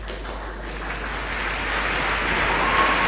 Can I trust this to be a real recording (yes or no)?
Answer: yes